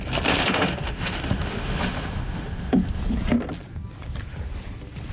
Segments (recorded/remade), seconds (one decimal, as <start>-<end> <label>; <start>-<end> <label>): 0.0-0.4 recorded; 0.4-3.0 remade; 3.0-5.1 recorded